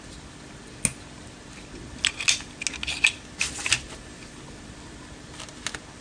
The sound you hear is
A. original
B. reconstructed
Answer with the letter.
A